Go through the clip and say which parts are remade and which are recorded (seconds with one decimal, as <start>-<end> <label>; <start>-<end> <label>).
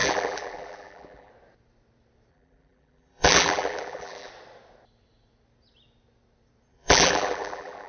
0.0-1.3 remade; 1.3-2.3 recorded; 2.3-4.3 remade; 4.3-6.7 recorded; 6.7-7.9 remade